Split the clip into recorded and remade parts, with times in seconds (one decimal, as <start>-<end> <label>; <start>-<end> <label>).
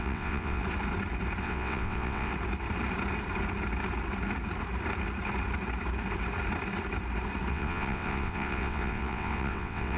0.0-0.6 remade; 0.6-1.4 recorded; 1.4-2.3 remade; 2.3-7.5 recorded; 7.5-10.0 remade